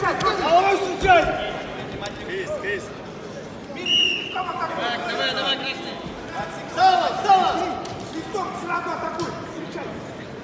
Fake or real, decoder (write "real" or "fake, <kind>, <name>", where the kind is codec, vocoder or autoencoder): real